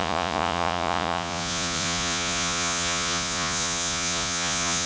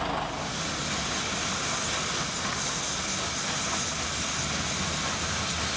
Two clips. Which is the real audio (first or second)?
second